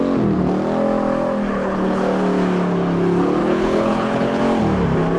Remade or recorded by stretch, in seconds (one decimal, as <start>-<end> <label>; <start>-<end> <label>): 0.0-1.5 recorded; 1.5-2.0 remade; 2.0-3.4 recorded; 3.4-4.4 remade; 4.4-5.2 recorded